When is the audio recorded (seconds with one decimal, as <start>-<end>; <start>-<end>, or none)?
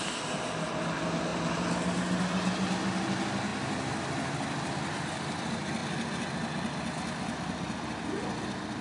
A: 0.0-8.8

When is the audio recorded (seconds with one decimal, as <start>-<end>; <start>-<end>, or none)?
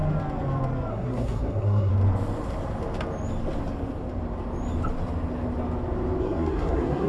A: 0.0-0.9; 1.9-6.2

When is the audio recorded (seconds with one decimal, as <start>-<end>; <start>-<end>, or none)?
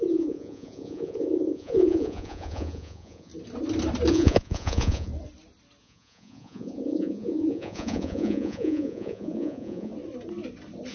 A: 3.3-4.1; 5.1-5.8; 9.9-10.9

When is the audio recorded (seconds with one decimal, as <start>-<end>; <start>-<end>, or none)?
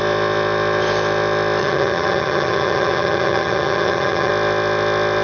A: 0.0-1.6; 4.3-5.2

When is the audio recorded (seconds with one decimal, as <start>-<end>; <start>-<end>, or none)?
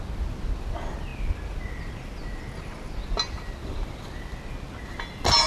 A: 0.0-5.5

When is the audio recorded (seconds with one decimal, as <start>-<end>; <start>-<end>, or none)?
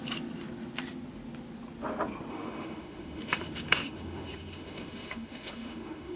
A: 0.0-2.3